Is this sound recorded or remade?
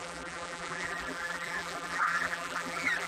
remade